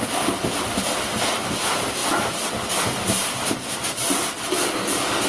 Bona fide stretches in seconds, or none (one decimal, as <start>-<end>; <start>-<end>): 0.0-5.3